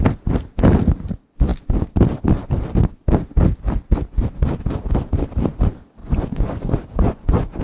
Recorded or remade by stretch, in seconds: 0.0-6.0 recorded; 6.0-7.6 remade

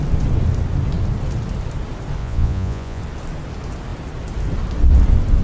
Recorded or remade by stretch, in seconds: 0.0-2.2 recorded; 2.2-3.0 remade; 3.0-5.4 recorded